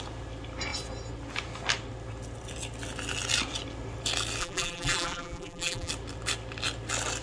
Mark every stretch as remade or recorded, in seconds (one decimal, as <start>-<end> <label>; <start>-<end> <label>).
0.0-4.4 recorded; 4.4-5.9 remade; 5.9-7.2 recorded